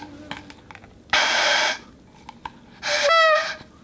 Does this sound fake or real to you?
real